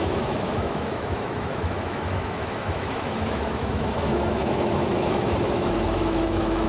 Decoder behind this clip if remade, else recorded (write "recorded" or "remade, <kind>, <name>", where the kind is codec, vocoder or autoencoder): remade, autoencoder, DAC-VAE